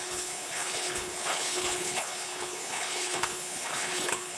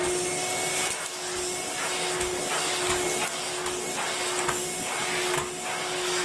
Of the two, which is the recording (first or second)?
second